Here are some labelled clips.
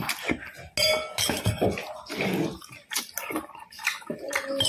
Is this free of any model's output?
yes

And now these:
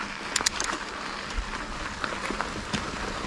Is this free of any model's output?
yes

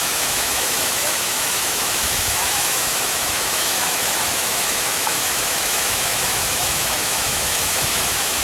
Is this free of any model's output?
no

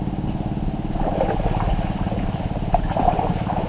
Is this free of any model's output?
yes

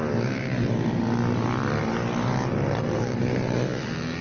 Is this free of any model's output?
yes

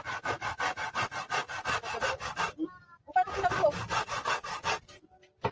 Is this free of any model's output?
yes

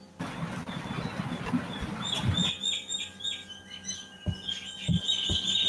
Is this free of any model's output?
yes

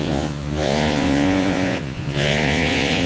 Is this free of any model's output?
no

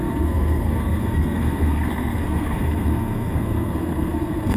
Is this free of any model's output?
no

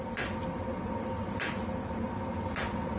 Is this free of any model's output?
yes